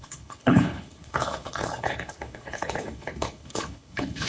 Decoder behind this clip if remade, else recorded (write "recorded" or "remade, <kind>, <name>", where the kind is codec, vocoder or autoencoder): remade, codec, HILCodec